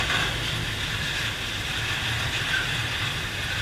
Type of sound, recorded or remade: recorded